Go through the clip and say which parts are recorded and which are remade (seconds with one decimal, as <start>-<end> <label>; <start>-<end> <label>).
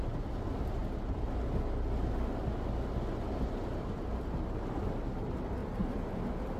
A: 0.0-5.6 recorded; 5.6-6.1 remade; 6.1-6.6 recorded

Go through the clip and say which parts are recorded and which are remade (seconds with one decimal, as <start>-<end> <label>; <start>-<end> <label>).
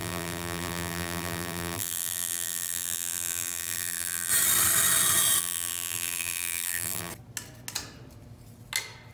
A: 0.0-4.3 remade; 4.3-5.4 recorded; 5.4-7.1 remade; 7.1-9.1 recorded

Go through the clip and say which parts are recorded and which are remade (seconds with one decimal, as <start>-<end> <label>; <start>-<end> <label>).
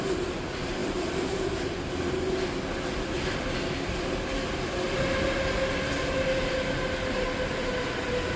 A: 0.0-8.4 recorded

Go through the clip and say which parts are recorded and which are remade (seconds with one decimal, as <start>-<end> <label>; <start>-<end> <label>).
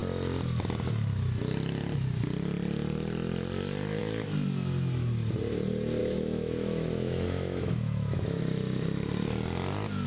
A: 0.0-6.0 recorded; 6.0-8.4 remade; 8.4-10.1 recorded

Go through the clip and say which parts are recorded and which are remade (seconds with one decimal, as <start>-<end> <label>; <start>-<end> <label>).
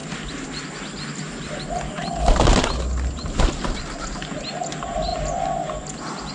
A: 0.0-6.3 recorded